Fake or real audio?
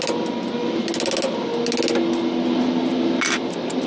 real